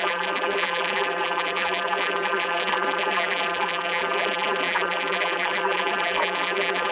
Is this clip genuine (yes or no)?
no